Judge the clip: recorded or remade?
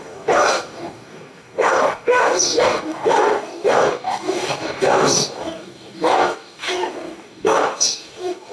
remade